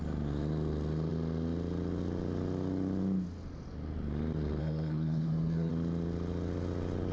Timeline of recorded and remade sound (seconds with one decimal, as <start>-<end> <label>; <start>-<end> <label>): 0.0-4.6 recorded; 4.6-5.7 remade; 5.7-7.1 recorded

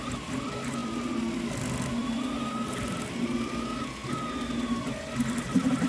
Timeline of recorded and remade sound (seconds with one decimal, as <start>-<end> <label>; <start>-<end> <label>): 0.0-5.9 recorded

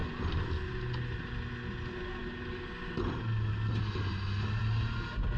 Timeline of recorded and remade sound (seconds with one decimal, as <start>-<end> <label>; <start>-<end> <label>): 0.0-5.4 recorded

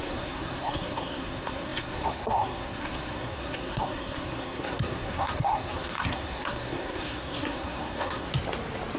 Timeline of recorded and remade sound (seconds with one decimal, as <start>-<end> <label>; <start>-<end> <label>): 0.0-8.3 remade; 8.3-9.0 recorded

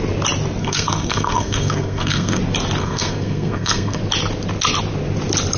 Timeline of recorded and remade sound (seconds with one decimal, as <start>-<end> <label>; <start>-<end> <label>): 0.0-0.6 recorded; 0.6-2.4 remade; 2.4-2.8 recorded; 2.8-4.0 remade; 4.0-5.6 recorded

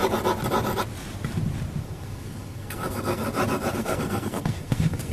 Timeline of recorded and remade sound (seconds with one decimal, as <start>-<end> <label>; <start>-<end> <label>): 0.0-1.8 recorded; 1.8-3.2 remade; 3.2-3.7 recorded; 3.7-5.1 remade